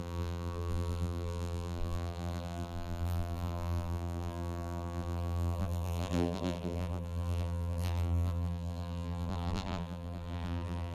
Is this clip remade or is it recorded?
remade